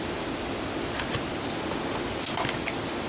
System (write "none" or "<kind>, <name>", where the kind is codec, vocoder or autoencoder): none